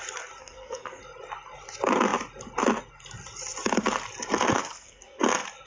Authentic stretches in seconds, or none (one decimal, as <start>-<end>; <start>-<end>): 0.0-0.4; 1.0-4.6; 5.2-5.7